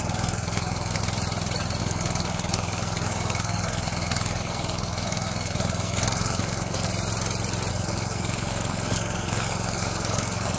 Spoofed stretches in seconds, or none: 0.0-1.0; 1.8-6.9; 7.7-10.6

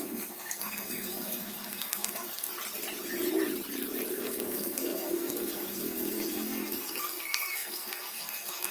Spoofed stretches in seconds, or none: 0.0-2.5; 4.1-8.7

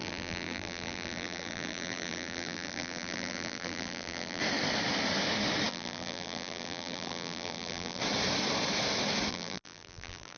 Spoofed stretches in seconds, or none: 0.0-4.4; 5.7-8.0; 9.3-10.4

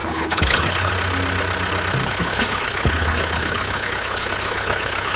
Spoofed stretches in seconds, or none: 0.0-0.9; 2.0-5.2

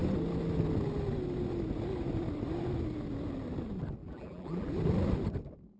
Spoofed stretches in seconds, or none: 4.0-4.7

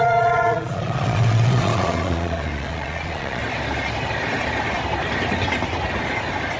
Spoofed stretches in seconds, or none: 0.0-3.4

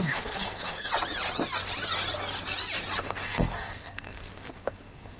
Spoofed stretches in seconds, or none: 0.0-0.9; 3.0-5.2

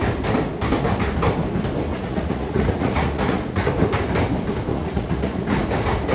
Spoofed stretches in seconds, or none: 1.9-3.7; 4.7-5.6